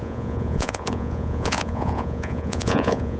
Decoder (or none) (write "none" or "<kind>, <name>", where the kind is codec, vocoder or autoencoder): vocoder, Vocos